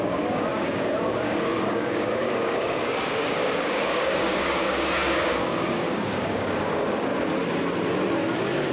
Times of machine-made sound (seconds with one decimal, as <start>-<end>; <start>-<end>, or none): 0.0-7.1